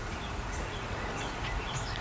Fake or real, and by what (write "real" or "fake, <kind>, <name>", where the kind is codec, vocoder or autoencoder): fake, vocoder, Vocos